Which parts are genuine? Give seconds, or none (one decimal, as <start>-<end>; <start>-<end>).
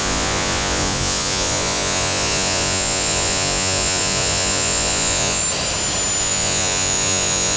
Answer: 5.4-6.2